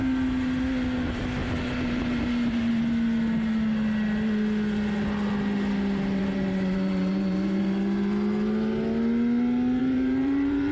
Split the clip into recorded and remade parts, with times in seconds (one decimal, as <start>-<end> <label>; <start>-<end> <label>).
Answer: 0.0-1.4 recorded; 1.4-2.7 remade; 2.7-6.2 recorded; 6.2-7.6 remade; 7.6-9.8 recorded; 9.8-10.7 remade